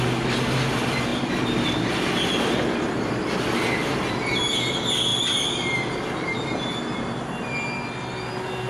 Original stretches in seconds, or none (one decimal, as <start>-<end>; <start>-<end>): 0.0-1.1; 3.4-3.9; 4.4-8.7